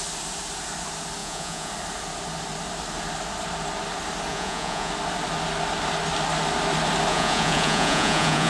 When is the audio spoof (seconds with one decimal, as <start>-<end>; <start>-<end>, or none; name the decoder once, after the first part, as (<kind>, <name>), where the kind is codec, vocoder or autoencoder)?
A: 1.2-1.7 (vocoder, Vocos); 4.3-4.9; 7.1-8.5